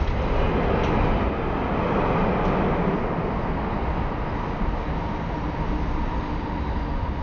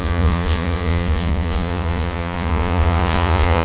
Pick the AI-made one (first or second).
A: second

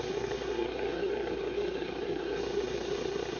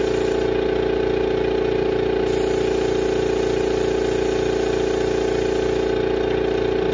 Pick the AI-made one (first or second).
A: first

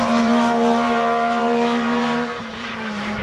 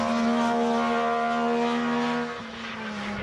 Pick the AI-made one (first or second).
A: first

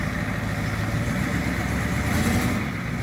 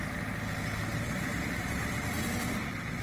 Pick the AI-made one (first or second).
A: second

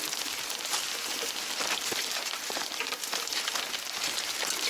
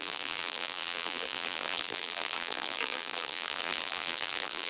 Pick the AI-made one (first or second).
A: second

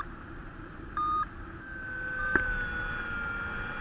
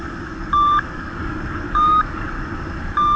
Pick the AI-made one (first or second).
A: second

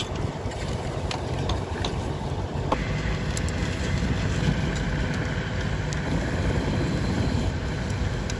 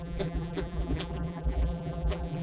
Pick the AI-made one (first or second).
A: second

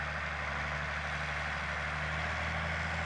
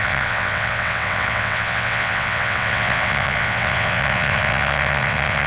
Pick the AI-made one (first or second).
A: second